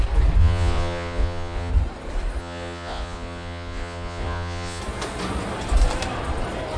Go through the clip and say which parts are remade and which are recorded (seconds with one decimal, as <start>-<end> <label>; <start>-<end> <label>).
0.0-0.4 recorded; 0.4-1.7 remade; 1.7-2.4 recorded; 2.4-4.8 remade; 4.8-6.8 recorded